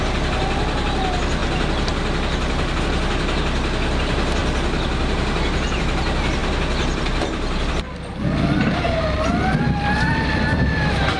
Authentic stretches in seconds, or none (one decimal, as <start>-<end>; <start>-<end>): 0.0-11.2